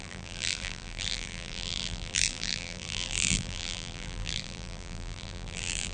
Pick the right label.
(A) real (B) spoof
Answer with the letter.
B